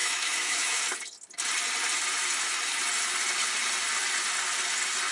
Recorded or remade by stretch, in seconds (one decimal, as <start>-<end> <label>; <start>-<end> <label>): 0.0-0.8 remade; 0.8-5.1 recorded